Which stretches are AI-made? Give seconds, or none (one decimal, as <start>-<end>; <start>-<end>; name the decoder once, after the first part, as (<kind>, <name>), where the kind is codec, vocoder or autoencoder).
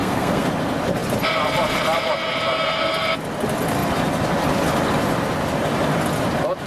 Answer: 0.0-0.5 (codec, SNAC)